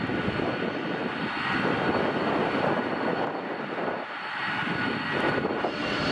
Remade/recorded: recorded